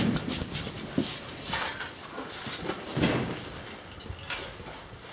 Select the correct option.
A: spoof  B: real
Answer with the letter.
B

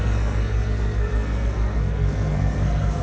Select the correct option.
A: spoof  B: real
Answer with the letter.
A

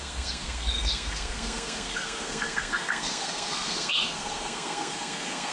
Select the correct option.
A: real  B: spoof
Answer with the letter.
B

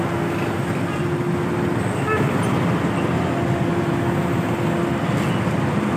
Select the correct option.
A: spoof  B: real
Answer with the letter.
B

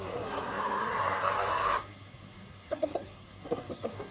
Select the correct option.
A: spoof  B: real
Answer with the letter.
A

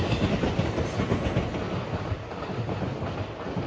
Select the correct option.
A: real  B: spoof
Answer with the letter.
A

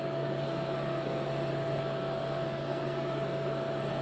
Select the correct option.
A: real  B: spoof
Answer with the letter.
B